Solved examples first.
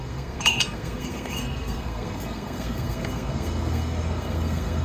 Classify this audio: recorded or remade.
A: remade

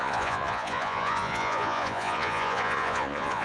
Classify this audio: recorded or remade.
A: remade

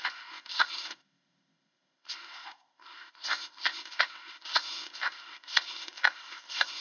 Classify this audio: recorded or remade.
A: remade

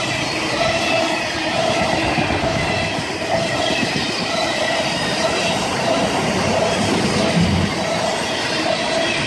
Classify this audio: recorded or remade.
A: recorded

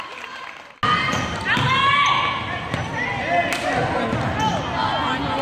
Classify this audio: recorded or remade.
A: recorded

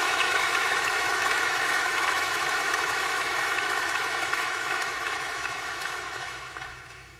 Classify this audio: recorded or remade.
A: remade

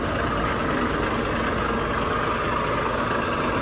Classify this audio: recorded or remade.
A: recorded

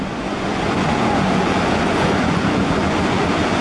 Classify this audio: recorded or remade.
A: remade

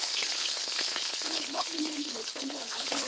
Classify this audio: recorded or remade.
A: remade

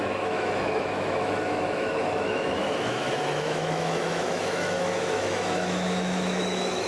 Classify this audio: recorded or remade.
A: remade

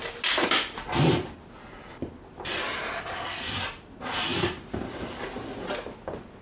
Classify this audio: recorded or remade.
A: recorded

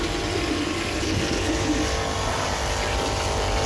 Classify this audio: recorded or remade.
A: recorded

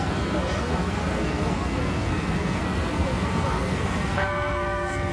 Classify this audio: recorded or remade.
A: remade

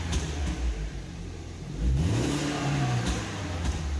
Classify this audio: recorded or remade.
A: remade